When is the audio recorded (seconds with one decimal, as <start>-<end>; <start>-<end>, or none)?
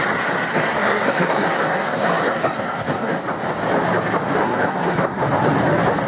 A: 0.0-0.5; 3.2-4.4; 5.2-6.1